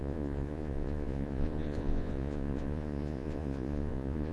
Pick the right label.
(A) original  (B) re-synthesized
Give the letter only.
B